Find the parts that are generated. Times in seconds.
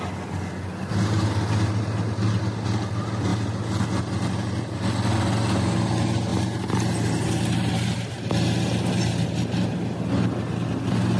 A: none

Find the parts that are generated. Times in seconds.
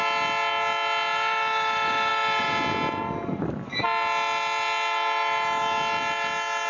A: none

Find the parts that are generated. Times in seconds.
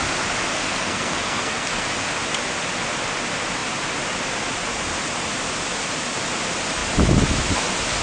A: 0.5-1.9 (codec, SNAC)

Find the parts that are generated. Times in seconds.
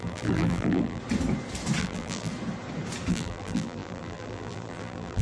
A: 0.0-1.0 (vocoder, BigVGAN v2); 1.8-2.3; 3.1-5.2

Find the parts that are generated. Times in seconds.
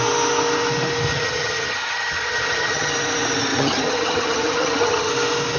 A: 1.1-2.9 (vocoder, HiFi-GAN); 3.5-5.1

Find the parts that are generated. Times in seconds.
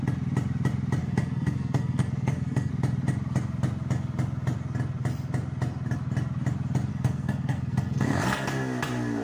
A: 1.0-2.7 (codec, SNAC); 6.9-8.5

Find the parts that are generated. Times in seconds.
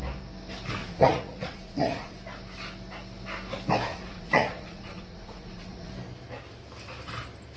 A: 0.8-2.2 (vocoder, Vocos); 3.9-5.9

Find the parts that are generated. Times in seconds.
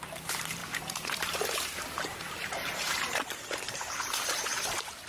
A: 0.0-4.5 (vocoder, BigVGAN v2)